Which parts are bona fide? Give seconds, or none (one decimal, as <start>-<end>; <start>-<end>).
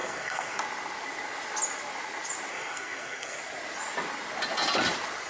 0.6-2.5; 3.4-5.3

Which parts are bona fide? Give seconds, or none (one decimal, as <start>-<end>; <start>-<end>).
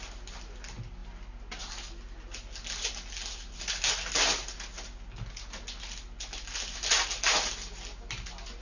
0.0-8.6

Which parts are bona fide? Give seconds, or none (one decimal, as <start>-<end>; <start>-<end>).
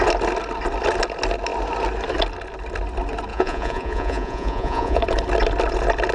0.0-3.3; 5.0-6.1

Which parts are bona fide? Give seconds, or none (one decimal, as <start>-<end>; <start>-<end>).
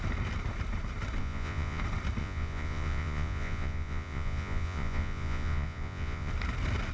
0.0-1.2; 1.8-2.2; 6.3-6.9